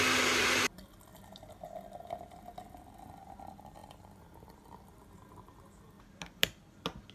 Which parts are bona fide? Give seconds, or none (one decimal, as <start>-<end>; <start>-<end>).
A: 0.0-7.1